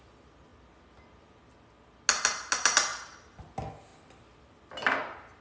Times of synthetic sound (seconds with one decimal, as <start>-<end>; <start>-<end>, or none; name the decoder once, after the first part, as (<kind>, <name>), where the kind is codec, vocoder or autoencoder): none